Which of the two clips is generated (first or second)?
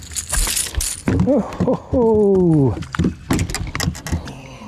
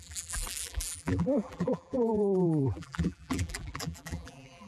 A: second